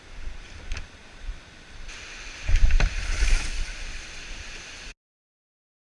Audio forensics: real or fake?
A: real